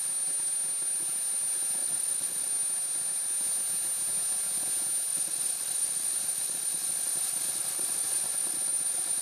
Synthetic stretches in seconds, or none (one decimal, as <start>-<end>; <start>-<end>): 1.8-2.5; 5.1-9.2